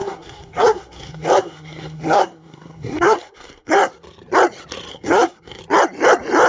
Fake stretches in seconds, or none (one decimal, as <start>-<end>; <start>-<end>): 0.0-3.9; 4.9-5.6